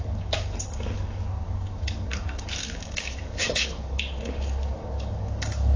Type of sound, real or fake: fake